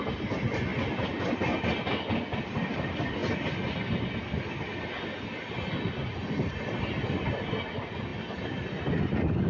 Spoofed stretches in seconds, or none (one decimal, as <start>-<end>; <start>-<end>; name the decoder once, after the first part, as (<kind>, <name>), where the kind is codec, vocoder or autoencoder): none